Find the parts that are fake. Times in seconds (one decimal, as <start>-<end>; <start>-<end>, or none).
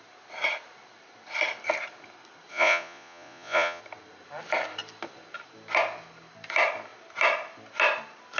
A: 2.5-3.8